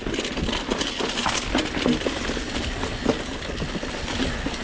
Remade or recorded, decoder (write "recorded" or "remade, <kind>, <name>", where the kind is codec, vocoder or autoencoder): recorded